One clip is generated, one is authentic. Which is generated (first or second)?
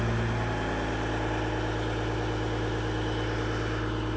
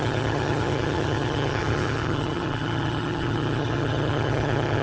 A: second